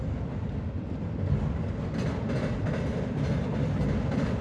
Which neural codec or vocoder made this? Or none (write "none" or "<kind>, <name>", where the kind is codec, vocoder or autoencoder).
none